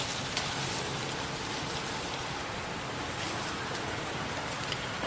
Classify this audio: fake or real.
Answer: real